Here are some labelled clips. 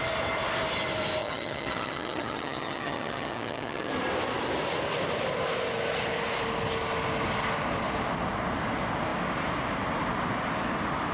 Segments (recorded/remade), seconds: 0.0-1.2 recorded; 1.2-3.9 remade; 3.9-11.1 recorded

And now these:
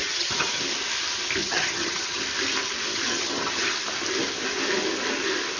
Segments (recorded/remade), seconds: 0.0-0.6 remade; 0.6-1.4 recorded; 1.4-2.2 remade; 2.2-2.9 recorded; 2.9-3.7 remade; 3.7-5.6 recorded

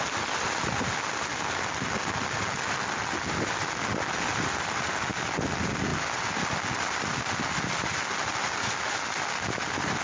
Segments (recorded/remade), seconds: 0.0-10.0 recorded

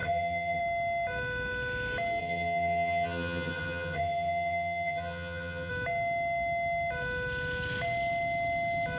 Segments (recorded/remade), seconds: 0.0-0.6 remade; 0.6-2.2 recorded; 2.2-5.7 remade; 5.7-9.0 recorded

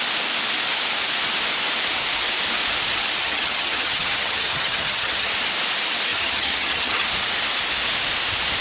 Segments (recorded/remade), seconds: 0.0-3.2 recorded; 3.2-5.3 remade; 5.3-6.1 recorded; 6.1-7.1 remade; 7.1-8.6 recorded

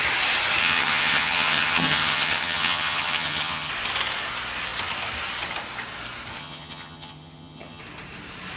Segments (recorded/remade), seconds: 0.0-0.6 recorded; 0.6-3.7 remade; 3.7-6.4 recorded; 6.4-7.8 remade; 7.8-8.6 recorded

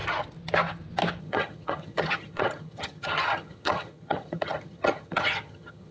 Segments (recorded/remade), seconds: 0.0-1.2 recorded; 1.2-5.9 remade

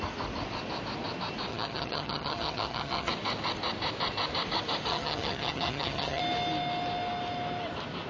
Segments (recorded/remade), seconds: 0.0-1.5 recorded; 1.5-3.1 remade; 3.1-4.9 recorded; 4.9-6.2 remade; 6.2-8.1 recorded